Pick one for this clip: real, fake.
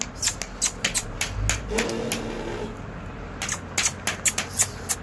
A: real